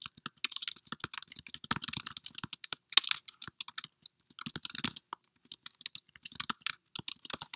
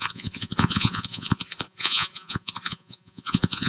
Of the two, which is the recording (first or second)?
first